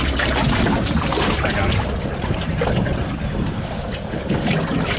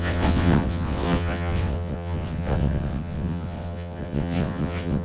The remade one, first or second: second